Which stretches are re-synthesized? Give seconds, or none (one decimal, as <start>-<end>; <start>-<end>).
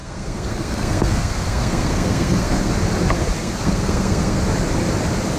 0.0-2.7; 3.4-4.4